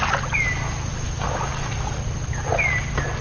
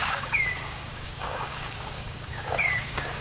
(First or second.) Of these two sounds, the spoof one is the second